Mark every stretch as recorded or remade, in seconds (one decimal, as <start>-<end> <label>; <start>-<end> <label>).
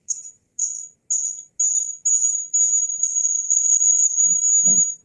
0.0-3.0 recorded; 3.0-4.2 remade; 4.2-5.0 recorded